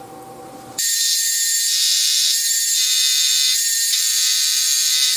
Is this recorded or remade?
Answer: remade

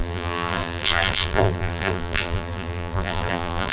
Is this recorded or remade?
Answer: remade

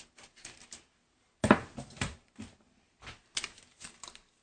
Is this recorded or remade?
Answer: recorded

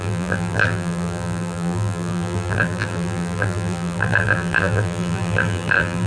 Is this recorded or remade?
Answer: remade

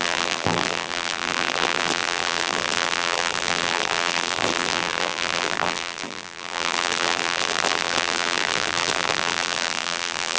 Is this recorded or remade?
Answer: remade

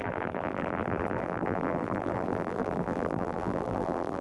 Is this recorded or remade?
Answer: remade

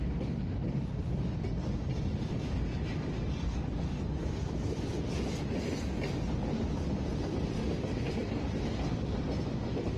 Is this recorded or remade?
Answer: recorded